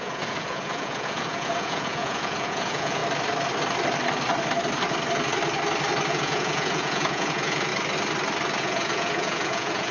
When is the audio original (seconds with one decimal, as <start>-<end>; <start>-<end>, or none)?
3.0-6.1; 7.7-8.6